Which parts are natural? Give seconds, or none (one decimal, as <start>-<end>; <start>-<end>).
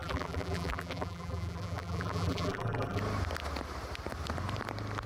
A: 3.0-5.1